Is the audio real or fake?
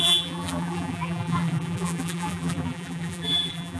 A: fake